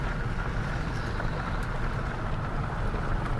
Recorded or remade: recorded